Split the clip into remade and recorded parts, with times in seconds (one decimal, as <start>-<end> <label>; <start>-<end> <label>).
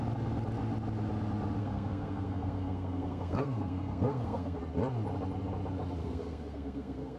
0.0-1.6 recorded; 1.6-4.6 remade; 4.6-6.0 recorded; 6.0-7.2 remade